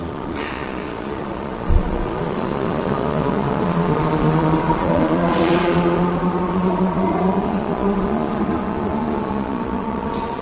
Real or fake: fake